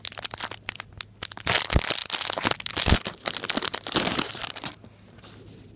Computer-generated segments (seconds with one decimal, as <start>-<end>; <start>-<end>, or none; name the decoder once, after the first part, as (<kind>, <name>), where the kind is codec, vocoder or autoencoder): none